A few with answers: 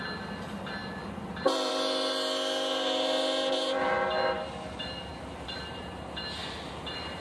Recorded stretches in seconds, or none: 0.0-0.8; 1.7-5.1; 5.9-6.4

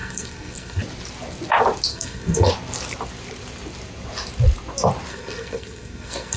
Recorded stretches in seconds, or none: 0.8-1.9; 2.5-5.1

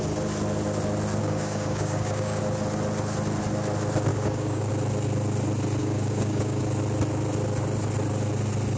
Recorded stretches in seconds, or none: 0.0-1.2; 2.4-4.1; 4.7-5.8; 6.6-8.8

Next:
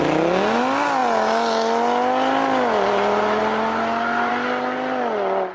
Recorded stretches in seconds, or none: 0.0-5.5

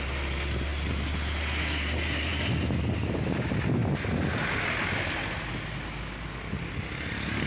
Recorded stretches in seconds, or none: 0.0-7.5